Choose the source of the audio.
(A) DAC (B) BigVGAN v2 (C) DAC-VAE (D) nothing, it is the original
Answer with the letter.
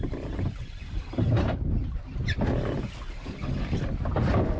D